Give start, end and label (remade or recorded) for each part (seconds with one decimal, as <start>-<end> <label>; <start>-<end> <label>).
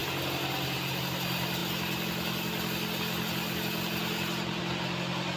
0.0-5.4 recorded